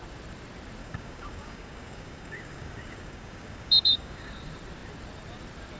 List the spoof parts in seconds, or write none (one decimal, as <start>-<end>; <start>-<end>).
0.8-4.3